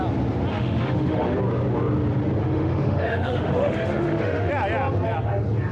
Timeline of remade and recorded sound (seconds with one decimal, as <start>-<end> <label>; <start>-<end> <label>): 0.0-0.5 recorded; 0.5-1.3 remade; 1.3-2.4 recorded; 2.4-4.5 remade; 4.5-5.7 recorded